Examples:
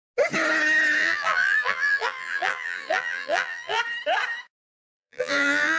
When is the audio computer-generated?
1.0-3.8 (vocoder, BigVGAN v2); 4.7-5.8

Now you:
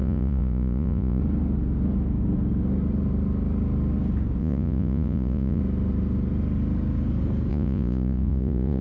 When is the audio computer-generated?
0.0-1.2 (vocoder, Vocos); 4.4-5.6; 7.5-8.8

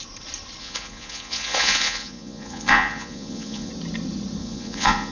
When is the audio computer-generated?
0.6-3.7 (vocoder, Vocos); 4.4-5.1

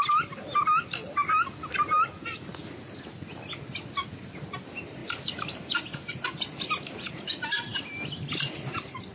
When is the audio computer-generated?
none